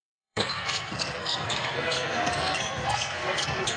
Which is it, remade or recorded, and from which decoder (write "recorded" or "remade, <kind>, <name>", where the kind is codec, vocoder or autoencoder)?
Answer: remade, codec, SNAC